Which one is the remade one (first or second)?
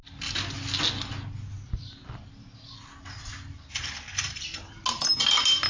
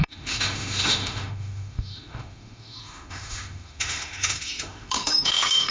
second